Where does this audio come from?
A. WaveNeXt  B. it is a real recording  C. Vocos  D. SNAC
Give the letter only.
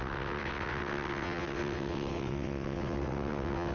A